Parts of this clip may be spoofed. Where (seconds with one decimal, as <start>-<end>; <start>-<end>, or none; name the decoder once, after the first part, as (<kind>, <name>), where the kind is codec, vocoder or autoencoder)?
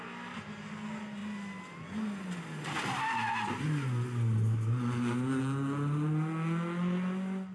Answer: none